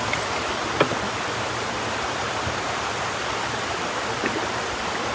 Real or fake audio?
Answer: real